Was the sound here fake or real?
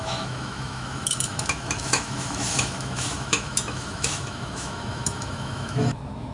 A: fake